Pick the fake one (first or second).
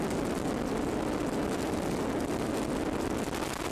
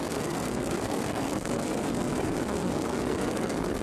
second